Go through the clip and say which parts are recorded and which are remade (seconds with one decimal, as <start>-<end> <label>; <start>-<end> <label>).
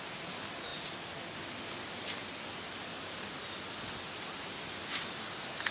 0.0-5.7 recorded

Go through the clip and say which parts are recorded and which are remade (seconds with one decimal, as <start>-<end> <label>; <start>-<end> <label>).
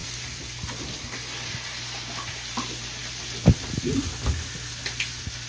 0.0-5.5 recorded